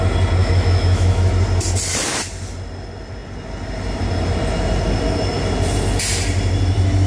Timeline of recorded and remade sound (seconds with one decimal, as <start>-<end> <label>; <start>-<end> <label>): 0.0-0.4 recorded; 0.4-1.3 remade; 1.3-7.1 recorded